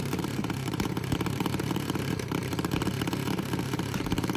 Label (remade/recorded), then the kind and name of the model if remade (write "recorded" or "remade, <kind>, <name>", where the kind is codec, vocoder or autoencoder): remade, vocoder, BigVGAN v2